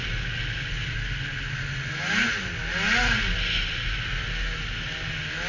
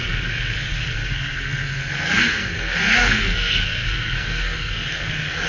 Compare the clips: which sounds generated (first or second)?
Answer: second